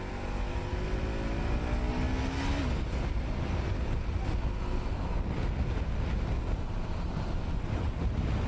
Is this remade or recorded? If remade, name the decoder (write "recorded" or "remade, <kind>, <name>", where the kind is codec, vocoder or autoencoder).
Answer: recorded